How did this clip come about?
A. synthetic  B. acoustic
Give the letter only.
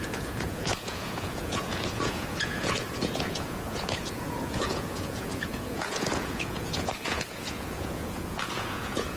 A